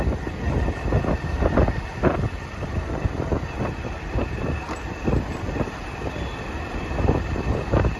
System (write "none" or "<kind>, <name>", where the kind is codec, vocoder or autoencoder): none